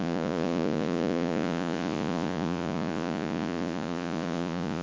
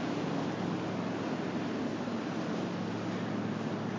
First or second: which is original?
second